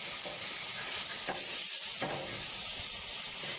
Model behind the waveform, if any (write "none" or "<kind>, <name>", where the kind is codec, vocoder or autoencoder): none